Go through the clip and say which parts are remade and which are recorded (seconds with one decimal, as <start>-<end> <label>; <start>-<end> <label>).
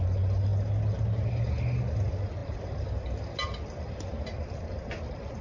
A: 0.0-5.4 recorded